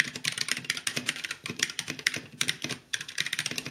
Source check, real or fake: fake